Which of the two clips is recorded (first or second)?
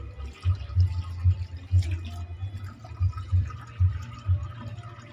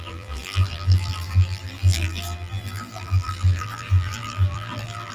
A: first